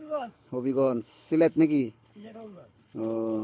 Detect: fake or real fake